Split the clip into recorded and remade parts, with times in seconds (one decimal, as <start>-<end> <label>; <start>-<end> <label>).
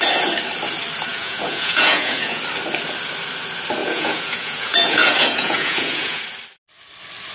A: 0.0-1.1 recorded; 1.1-2.4 remade; 2.4-3.8 recorded; 3.8-6.2 remade; 6.2-7.3 recorded